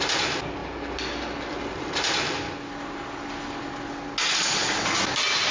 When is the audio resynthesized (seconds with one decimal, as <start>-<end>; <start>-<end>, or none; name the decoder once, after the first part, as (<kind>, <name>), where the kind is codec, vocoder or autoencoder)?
none